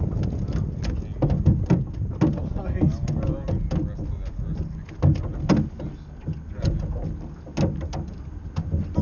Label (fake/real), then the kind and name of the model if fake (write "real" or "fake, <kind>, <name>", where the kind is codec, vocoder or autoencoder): real